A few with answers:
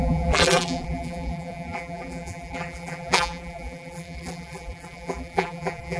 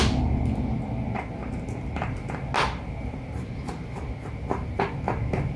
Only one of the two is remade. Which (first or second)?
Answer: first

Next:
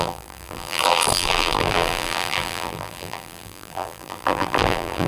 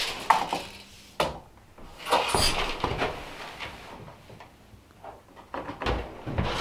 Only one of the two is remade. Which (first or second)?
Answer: first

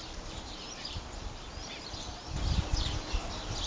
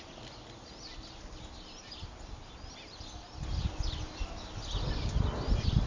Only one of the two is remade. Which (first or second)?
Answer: first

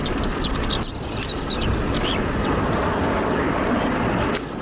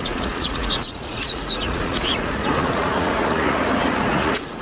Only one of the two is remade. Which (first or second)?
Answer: second